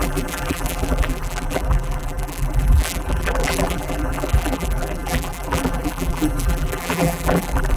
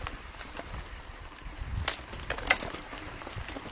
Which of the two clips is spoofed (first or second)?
first